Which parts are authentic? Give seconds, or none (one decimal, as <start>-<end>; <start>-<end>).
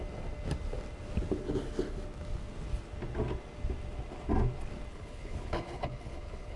0.0-4.9